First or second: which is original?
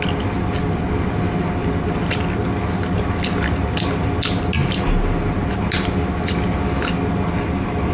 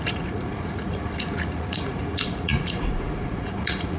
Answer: first